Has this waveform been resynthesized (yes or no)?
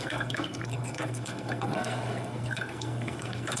yes